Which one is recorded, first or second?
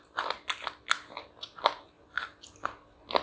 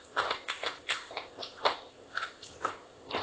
first